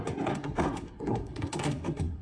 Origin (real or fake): fake